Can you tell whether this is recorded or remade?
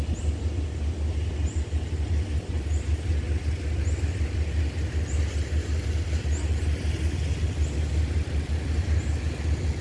recorded